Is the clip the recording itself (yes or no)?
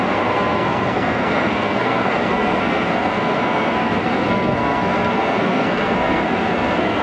no